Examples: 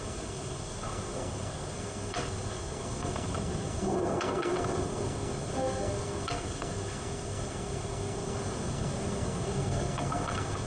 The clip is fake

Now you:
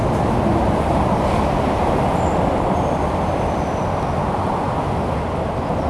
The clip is real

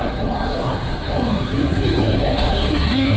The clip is fake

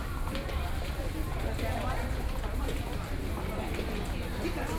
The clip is real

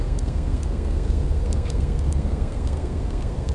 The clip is fake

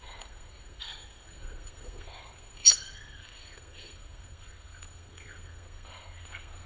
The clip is fake